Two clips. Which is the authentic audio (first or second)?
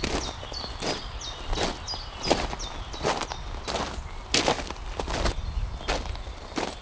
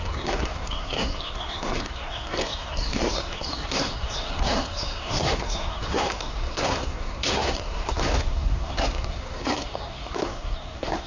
first